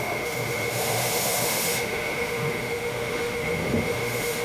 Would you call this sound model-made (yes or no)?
yes